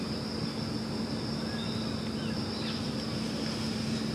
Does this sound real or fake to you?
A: real